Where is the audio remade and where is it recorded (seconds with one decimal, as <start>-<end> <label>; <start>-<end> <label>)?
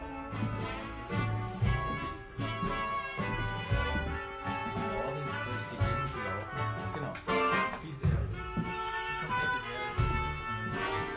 0.0-7.8 recorded; 7.8-9.5 remade; 9.5-11.2 recorded